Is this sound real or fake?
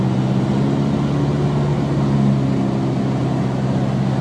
real